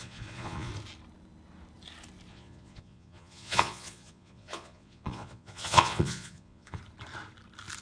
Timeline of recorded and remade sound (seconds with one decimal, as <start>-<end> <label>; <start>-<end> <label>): 0.0-0.7 remade; 0.7-2.3 recorded; 2.3-6.8 remade; 6.8-7.8 recorded